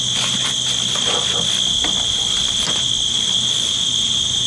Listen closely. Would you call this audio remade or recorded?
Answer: recorded